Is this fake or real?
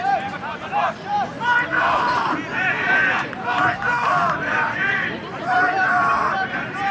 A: fake